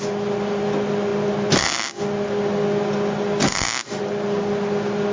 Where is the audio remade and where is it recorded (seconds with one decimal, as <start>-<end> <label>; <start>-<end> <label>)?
0.0-5.1 recorded